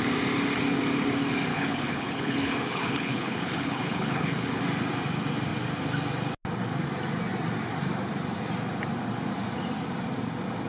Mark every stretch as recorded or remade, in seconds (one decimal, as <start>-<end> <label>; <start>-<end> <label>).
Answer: 0.0-1.5 recorded; 1.5-4.6 remade; 4.6-10.7 recorded